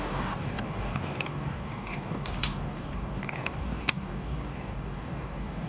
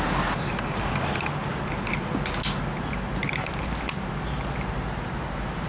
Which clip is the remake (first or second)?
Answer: first